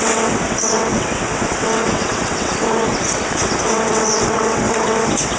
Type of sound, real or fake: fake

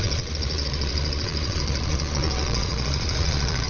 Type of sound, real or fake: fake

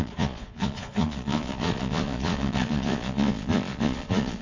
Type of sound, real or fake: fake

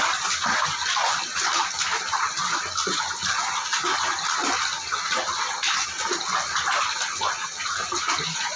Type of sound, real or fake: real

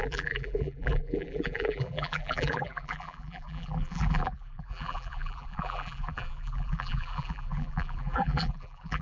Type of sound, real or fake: fake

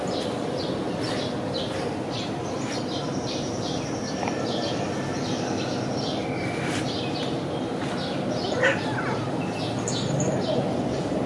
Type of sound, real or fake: real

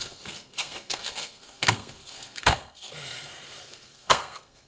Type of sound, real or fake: fake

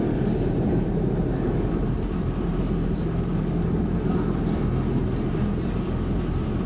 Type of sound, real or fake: fake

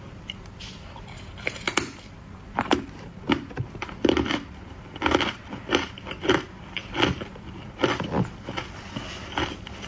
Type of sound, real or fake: fake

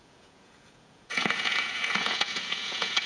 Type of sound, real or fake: fake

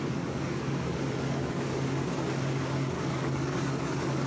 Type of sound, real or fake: fake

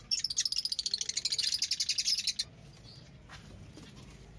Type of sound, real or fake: real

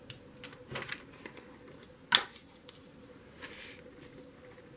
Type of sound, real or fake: real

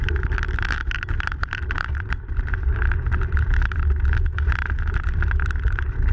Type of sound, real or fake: real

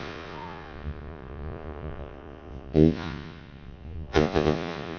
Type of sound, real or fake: fake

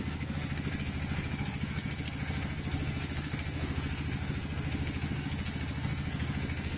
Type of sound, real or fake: fake